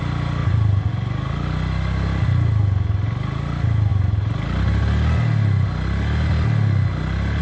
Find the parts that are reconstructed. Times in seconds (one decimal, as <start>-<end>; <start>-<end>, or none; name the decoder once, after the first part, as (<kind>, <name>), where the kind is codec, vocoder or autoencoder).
none